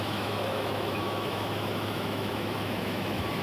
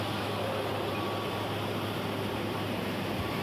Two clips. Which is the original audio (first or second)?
second